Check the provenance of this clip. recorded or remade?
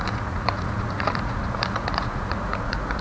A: remade